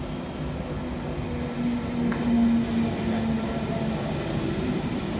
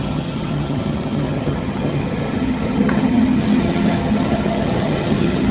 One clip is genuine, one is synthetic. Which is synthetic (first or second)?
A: second